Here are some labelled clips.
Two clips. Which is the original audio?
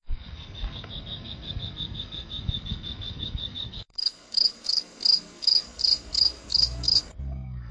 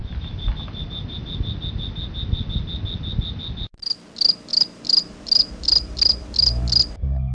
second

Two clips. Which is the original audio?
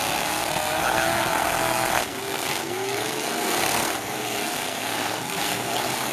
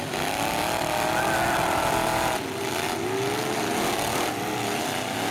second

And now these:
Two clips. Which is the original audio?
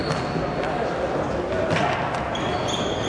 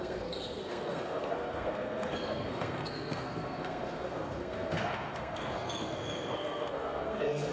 first